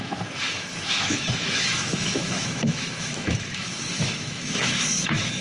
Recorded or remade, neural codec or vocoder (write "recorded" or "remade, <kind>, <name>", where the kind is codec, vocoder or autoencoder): remade, autoencoder, DAC-VAE